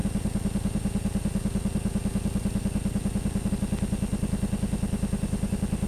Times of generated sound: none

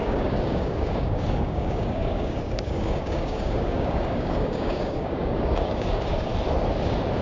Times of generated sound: 0.0-6.3 (codec, DAC)